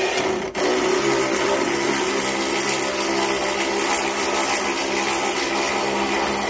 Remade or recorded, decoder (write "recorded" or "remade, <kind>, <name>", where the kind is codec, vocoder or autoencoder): recorded